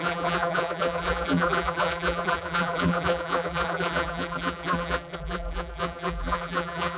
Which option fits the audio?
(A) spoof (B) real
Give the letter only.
A